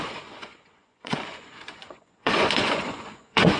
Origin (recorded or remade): remade